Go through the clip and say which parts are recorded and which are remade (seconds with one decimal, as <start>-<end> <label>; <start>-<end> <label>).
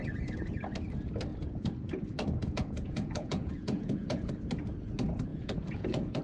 0.0-1.3 recorded; 1.3-1.9 remade; 1.9-2.4 recorded; 2.4-4.3 remade; 4.3-5.3 recorded; 5.3-6.2 remade